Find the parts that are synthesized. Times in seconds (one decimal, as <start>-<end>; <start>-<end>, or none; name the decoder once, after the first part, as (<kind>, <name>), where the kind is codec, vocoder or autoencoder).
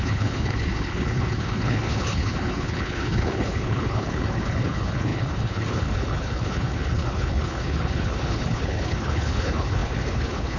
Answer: 0.0-10.6 (codec, HILCodec)